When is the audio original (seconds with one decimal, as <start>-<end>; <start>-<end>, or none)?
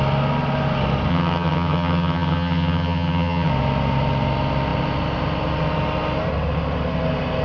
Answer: 0.0-1.1; 3.5-7.4